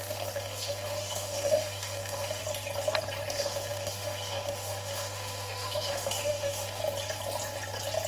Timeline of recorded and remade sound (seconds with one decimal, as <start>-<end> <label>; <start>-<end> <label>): 0.0-2.4 remade; 2.4-3.3 recorded; 3.3-6.8 remade; 6.8-8.1 recorded